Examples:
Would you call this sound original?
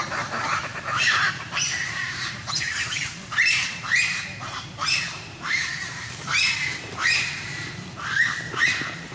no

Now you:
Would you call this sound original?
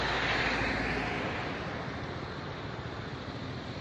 yes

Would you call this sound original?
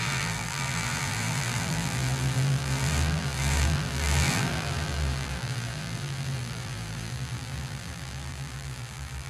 no